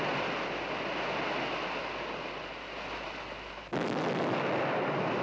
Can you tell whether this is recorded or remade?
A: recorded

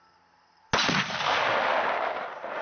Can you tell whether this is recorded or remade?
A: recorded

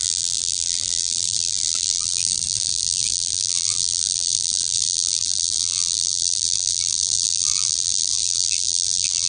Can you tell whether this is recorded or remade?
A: remade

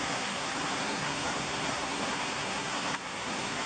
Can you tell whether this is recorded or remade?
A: remade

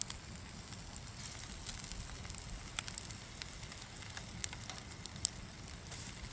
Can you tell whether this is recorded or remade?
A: recorded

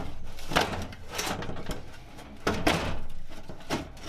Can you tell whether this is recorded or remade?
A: recorded